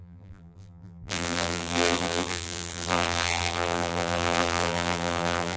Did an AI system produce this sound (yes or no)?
yes